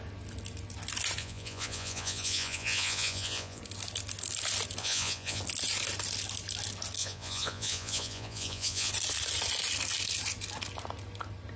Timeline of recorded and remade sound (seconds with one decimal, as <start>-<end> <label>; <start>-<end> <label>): 0.0-1.2 recorded; 1.2-3.6 remade; 3.6-4.8 recorded; 4.8-5.4 remade; 5.4-7.0 recorded; 7.0-8.9 remade; 8.9-11.6 recorded

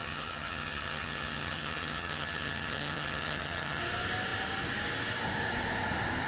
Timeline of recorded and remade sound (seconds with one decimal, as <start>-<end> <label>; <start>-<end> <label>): 0.0-3.8 remade; 3.8-6.3 recorded

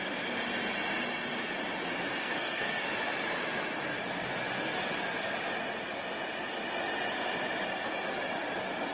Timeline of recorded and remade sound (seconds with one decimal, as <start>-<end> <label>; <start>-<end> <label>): 0.0-2.2 recorded; 2.2-2.8 remade; 2.8-8.9 recorded

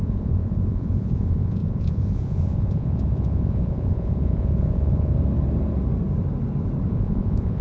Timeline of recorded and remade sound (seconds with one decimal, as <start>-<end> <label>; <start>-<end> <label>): 0.0-5.1 remade; 5.1-6.9 recorded; 6.9-7.6 remade